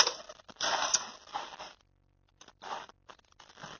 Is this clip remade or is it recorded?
recorded